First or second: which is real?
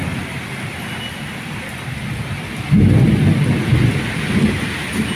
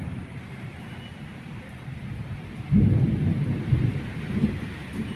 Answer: first